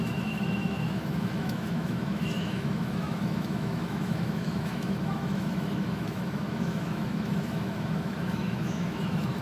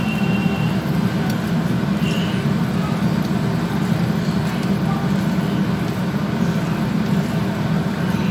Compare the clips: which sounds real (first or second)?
second